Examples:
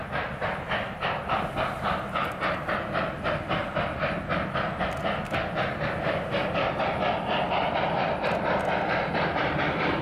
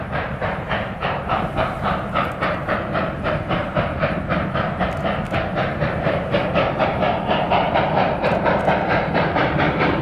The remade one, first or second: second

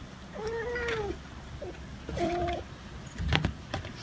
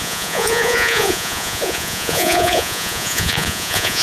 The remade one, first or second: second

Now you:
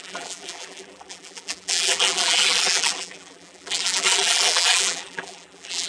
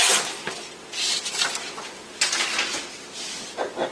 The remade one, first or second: first